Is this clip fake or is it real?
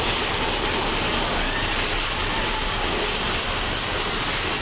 real